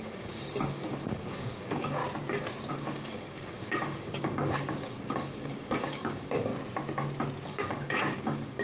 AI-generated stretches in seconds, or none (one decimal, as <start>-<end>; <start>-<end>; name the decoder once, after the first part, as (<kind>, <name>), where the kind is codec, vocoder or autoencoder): 0.0-2.0 (codec, DAC); 2.7-6.5; 7.5-8.6